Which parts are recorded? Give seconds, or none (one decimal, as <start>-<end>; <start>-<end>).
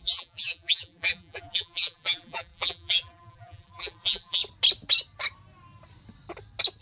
4.4-6.8